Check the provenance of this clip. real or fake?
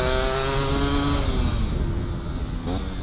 real